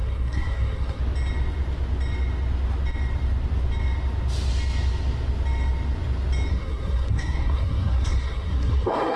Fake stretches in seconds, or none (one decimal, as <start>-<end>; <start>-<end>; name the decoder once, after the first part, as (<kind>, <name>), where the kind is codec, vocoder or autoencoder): 0.0-1.0 (codec, SNAC); 6.5-9.2